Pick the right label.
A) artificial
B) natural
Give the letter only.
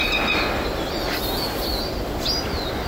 B